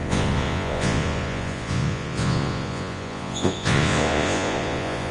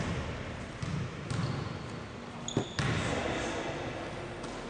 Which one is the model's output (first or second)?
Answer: first